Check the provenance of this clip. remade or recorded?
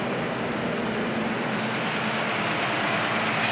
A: recorded